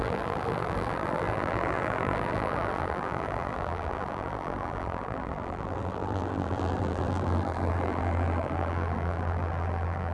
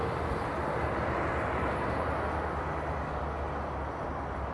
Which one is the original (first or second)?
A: second